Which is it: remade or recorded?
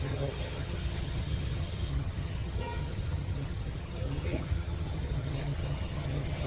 remade